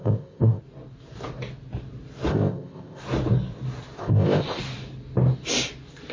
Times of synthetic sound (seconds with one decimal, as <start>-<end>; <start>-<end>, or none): 0.0-0.6; 2.3-3.0; 4.0-4.6